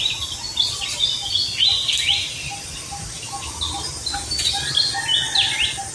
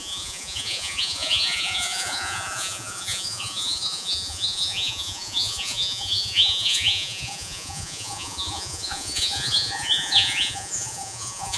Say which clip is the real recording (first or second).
first